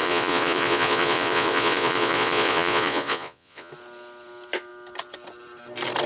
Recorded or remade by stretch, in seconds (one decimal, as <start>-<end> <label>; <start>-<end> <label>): 0.0-3.7 remade; 3.7-6.1 recorded